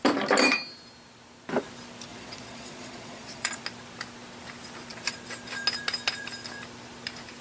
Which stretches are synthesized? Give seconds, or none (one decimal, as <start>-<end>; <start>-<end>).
2.1-3.6